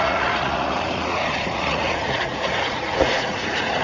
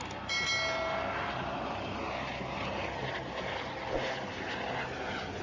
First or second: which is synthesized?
first